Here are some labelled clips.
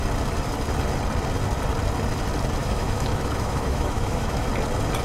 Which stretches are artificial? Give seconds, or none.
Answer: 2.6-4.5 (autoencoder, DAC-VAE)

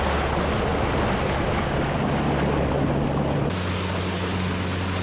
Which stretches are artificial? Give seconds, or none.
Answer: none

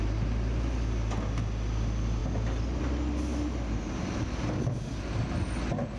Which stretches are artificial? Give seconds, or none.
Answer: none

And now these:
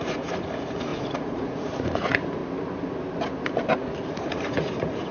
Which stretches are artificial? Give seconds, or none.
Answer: 0.0-2.4 (vocoder, Vocos); 4.1-5.1